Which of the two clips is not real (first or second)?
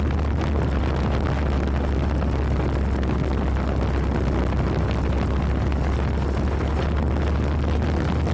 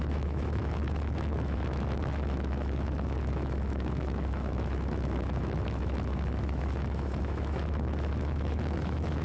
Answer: second